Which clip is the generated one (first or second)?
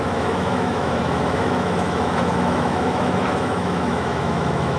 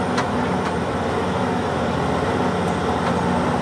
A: first